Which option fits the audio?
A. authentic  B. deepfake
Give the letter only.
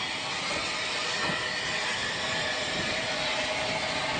A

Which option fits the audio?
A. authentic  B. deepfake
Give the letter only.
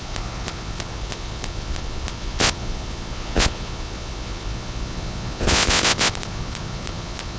B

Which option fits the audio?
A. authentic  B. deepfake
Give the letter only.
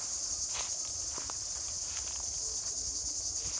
A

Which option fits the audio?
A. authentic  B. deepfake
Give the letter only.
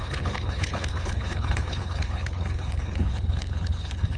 B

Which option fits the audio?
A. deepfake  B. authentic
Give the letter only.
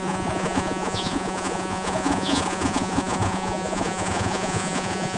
A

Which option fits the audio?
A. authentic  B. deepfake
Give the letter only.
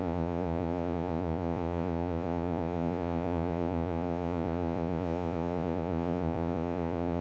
B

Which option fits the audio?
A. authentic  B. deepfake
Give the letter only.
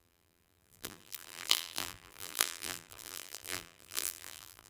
B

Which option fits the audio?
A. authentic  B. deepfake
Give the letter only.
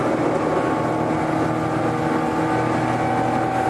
A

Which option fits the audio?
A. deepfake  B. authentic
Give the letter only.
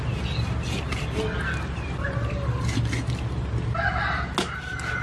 B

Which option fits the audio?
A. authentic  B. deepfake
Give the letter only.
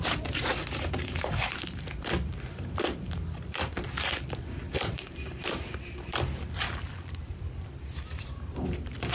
B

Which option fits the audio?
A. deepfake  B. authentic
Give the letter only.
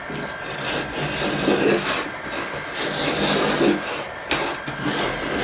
B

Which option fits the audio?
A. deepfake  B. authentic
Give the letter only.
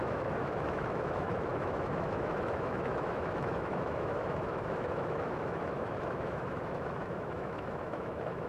A